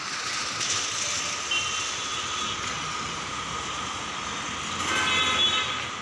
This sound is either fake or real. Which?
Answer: real